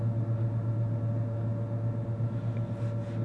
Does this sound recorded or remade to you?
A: recorded